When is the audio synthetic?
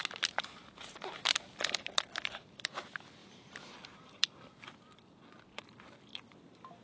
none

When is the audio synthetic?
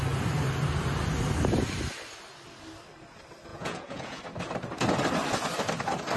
3.5-4.2 (vocoder, Vocos)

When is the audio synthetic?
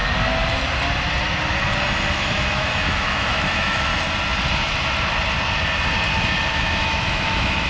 2.1-3.9 (autoencoder, DAC-VAE); 6.5-7.7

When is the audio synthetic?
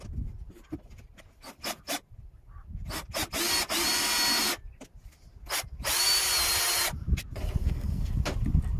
7.6-8.1 (codec, SNAC)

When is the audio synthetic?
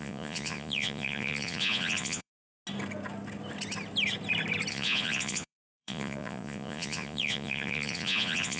0.0-2.3 (vocoder, Vocos); 4.7-8.6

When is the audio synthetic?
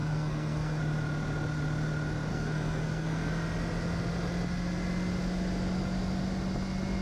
0.0-0.8 (codec, SNAC); 2.3-3.3